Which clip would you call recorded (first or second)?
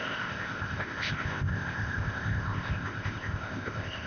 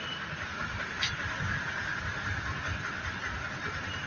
second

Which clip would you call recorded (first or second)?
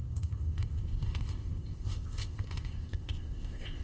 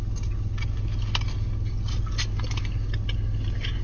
second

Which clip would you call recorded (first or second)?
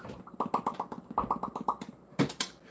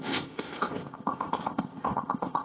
first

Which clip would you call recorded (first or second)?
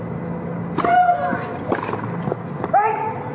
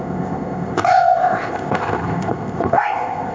first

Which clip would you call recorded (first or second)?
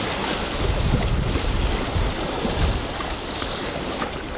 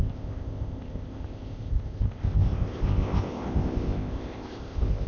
first